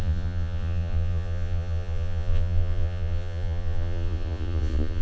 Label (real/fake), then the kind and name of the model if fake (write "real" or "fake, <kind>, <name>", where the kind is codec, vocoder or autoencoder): fake, vocoder, Vocos